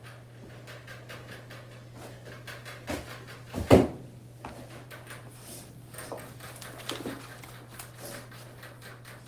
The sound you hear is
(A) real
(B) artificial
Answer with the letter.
A